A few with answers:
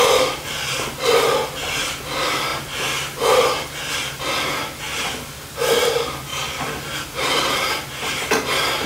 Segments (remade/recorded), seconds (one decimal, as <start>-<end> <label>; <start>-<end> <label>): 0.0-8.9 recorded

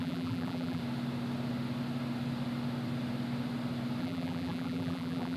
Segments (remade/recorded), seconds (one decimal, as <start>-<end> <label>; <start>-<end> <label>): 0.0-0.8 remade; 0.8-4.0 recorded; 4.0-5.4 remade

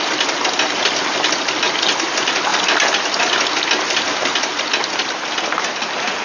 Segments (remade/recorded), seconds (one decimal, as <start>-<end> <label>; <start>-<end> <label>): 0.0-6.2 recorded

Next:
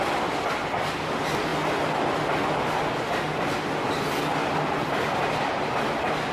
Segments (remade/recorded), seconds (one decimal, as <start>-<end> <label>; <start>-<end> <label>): 0.0-6.3 recorded

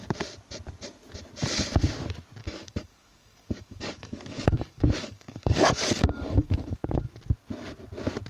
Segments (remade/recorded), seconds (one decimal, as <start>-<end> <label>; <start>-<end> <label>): 0.0-2.4 recorded; 2.4-7.2 remade; 7.2-8.3 recorded

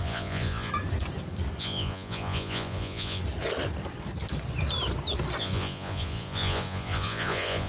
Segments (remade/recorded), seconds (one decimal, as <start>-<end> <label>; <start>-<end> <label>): 0.0-0.7 remade; 0.7-1.6 recorded; 1.6-3.2 remade; 3.2-5.4 recorded; 5.4-7.7 remade